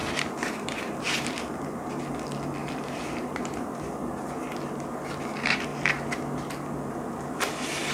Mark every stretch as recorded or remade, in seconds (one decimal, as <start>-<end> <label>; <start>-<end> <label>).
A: 0.0-1.2 remade; 1.2-2.6 recorded; 2.6-3.8 remade; 3.8-7.9 recorded